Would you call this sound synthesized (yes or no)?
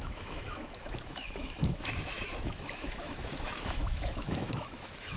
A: yes